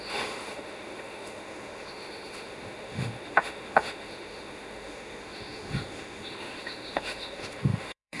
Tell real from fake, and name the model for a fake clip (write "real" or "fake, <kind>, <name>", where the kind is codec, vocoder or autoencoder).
fake, autoencoder, DAC-VAE